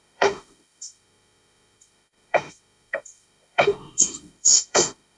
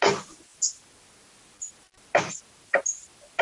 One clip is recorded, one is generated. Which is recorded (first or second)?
second